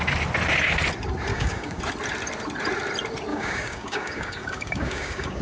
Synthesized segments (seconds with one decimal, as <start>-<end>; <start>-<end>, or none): 1.3-1.8; 3.3-5.4